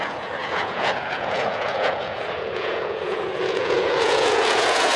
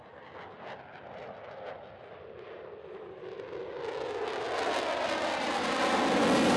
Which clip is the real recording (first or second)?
second